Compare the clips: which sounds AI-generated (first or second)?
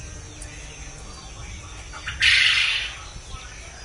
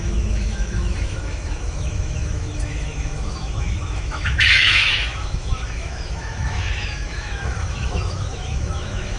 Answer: second